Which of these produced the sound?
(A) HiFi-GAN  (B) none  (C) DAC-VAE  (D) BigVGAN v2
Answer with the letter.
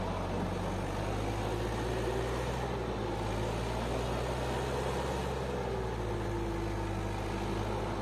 B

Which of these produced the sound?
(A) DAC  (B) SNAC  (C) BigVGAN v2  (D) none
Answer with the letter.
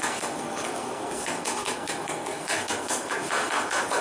B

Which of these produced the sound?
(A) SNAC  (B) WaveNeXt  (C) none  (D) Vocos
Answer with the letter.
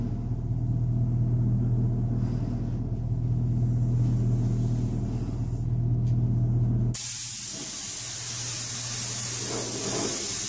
C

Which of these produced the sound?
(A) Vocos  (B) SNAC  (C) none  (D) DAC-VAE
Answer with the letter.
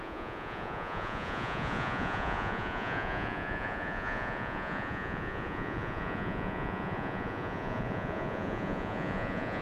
A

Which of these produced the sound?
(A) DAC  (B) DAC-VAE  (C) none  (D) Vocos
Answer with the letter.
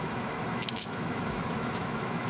B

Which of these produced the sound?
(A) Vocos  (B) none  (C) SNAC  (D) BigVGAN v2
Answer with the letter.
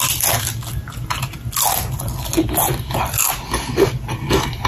B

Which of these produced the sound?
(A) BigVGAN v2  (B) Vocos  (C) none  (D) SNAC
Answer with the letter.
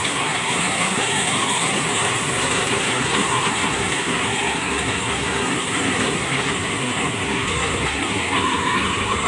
D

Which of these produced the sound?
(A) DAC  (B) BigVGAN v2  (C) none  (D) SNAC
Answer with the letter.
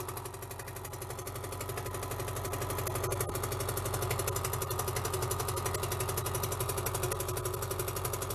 C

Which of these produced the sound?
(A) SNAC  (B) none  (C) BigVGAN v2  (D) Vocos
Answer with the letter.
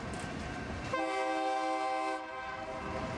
B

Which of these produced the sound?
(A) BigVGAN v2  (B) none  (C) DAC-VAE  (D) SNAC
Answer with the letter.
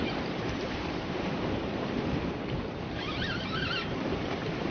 A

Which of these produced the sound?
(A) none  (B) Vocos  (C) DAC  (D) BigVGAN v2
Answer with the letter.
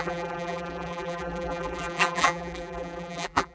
D